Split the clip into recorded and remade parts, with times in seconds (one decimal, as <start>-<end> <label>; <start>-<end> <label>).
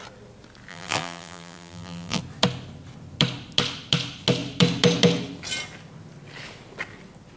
0.0-0.7 recorded; 0.7-2.2 remade; 2.2-7.4 recorded